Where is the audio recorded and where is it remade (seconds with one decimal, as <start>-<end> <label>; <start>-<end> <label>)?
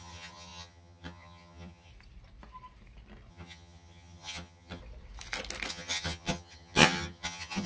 0.0-1.9 remade; 1.9-3.3 recorded; 3.3-4.8 remade; 4.8-5.7 recorded; 5.7-7.7 remade